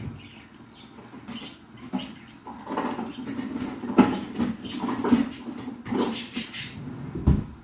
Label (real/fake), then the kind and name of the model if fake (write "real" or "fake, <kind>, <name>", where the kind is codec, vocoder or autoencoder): real